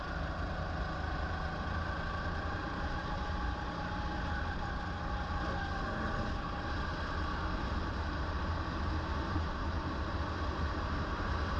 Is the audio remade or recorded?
recorded